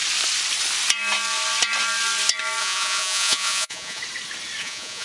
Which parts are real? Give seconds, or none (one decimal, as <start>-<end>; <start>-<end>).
0.0-2.6; 4.0-4.6